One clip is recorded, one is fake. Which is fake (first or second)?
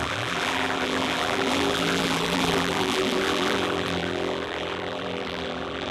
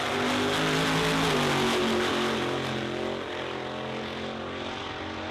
first